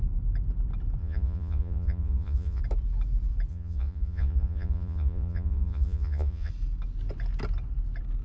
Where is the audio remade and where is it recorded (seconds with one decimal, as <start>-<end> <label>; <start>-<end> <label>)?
0.0-1.0 recorded; 1.0-2.6 remade; 2.6-3.5 recorded; 3.5-6.5 remade; 6.5-8.2 recorded